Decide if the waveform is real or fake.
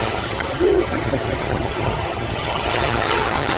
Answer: fake